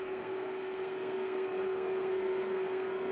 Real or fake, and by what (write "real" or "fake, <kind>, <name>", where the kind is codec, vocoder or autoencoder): fake, codec, SNAC